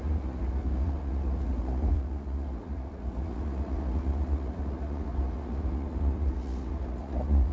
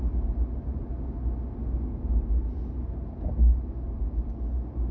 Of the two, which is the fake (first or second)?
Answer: first